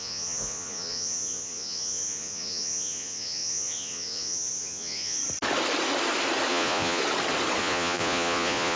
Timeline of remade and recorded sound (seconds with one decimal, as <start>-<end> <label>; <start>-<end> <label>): 0.0-5.2 remade; 5.2-6.5 recorded; 6.5-7.0 remade; 7.0-7.6 recorded; 7.6-8.8 remade